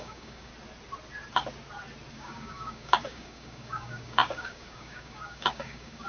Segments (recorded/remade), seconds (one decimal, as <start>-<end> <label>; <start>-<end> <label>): 0.0-0.5 remade; 0.5-2.1 recorded; 2.1-6.1 remade